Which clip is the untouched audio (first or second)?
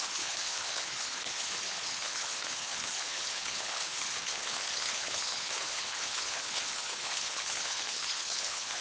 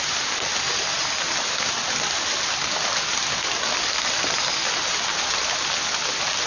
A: second